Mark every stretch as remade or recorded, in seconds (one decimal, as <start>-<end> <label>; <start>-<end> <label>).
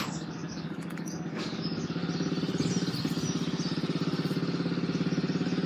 0.0-2.0 remade; 2.0-5.7 recorded